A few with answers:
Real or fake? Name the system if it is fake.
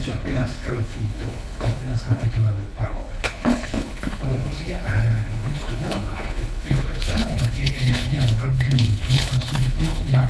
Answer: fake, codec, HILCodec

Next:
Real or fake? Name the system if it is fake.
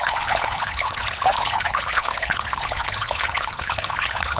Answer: fake, codec, HILCodec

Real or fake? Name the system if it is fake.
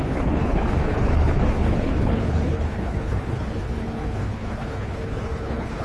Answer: fake, codec, HILCodec